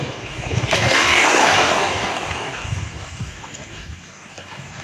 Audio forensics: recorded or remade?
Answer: remade